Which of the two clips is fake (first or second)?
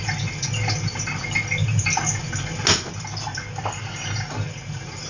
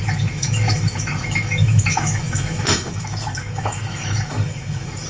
second